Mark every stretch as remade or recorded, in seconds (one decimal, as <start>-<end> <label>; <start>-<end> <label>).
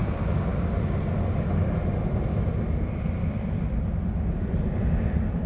0.0-5.5 recorded